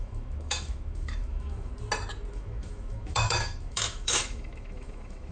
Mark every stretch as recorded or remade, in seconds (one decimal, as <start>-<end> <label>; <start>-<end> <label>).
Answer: 0.0-1.7 remade; 1.7-2.3 recorded; 2.3-5.3 remade